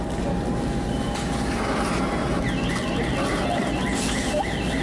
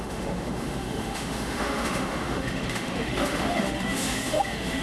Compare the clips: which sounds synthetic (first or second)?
second